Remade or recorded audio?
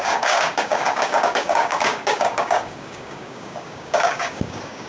remade